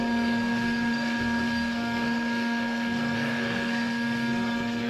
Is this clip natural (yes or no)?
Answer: no